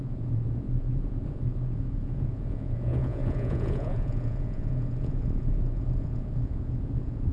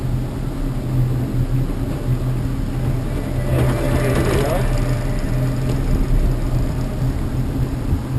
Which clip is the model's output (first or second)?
first